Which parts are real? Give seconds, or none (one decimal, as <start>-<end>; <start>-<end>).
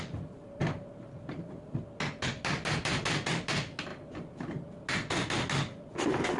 0.0-6.4